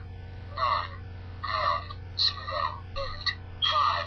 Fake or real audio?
real